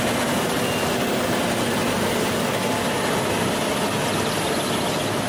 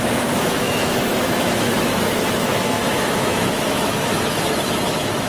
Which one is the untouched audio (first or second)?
first